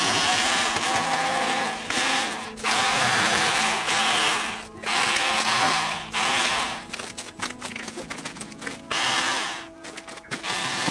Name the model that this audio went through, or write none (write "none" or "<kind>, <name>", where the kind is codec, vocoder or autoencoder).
vocoder, BigVGAN v2